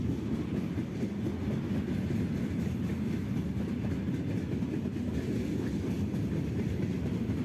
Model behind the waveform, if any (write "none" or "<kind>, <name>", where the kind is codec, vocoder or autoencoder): none